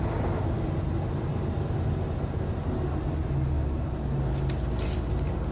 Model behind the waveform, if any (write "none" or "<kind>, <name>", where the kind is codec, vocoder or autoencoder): none